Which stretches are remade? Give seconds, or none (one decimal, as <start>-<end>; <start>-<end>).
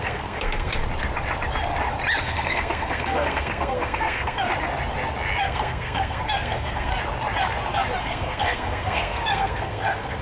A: 0.0-0.8; 2.2-4.5; 5.4-6.9; 8.0-10.2